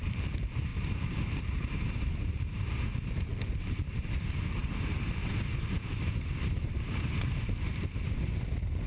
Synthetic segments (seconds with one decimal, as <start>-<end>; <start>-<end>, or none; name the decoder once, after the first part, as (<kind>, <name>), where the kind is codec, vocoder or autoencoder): 0.0-0.7 (vocoder, BigVGAN v2); 1.4-8.9